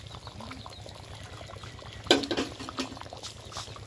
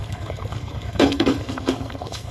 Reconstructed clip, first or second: second